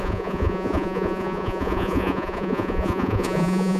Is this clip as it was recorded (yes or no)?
no